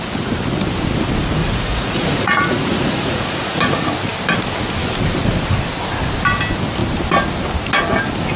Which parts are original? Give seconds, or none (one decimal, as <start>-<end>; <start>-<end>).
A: 0.0-1.4; 3.6-8.4